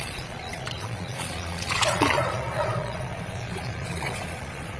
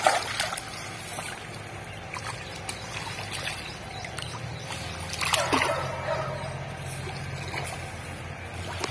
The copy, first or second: first